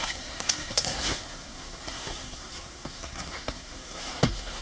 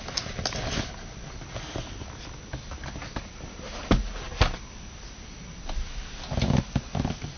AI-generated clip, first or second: first